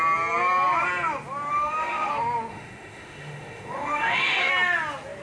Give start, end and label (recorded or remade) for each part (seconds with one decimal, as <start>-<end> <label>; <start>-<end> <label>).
0.0-1.5 recorded; 1.5-2.1 remade; 2.1-2.5 recorded; 2.5-4.5 remade; 4.5-5.2 recorded